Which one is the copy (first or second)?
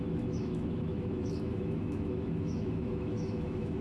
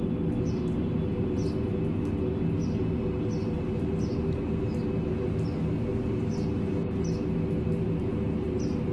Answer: first